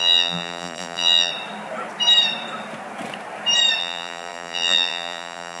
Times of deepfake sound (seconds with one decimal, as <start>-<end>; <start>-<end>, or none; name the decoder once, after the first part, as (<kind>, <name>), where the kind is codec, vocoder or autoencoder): 0.0-1.3 (vocoder, BigVGAN v2); 3.8-5.6